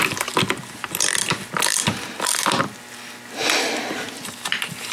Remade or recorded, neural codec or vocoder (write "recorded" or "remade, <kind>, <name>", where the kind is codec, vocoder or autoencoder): recorded